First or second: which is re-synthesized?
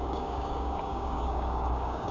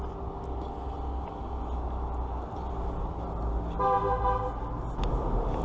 first